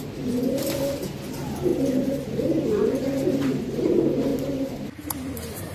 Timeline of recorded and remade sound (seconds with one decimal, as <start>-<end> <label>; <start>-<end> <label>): 0.0-5.7 recorded